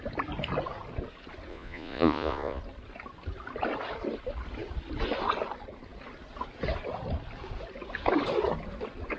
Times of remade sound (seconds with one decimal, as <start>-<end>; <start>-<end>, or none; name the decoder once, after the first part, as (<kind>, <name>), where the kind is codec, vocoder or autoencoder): 1.5-2.6 (vocoder, Vocos)